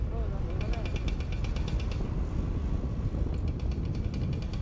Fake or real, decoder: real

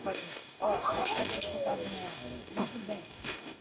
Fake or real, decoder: fake, codec, DAC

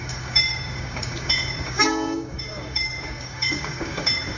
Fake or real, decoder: fake, codec, DAC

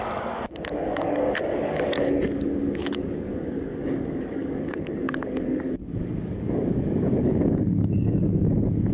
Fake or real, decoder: fake, codec, DAC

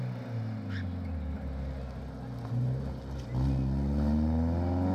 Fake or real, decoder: real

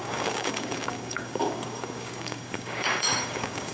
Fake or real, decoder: fake, codec, DAC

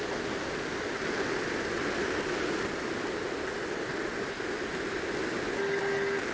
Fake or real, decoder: real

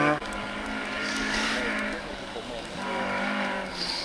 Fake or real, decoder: fake, codec, DAC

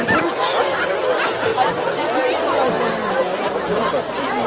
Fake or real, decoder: real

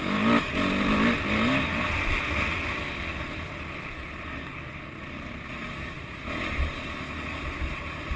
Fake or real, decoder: real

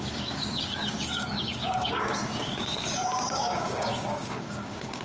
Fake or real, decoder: fake, codec, DAC